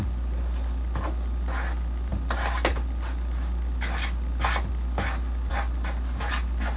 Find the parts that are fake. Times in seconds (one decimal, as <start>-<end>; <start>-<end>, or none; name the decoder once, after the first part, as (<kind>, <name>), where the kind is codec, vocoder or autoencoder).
none